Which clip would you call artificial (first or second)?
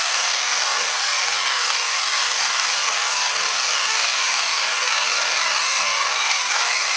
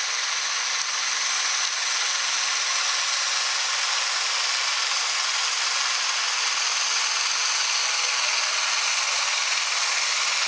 first